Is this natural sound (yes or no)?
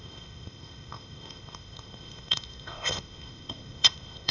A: no